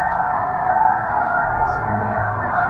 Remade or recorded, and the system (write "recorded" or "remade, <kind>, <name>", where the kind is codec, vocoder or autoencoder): remade, codec, SNAC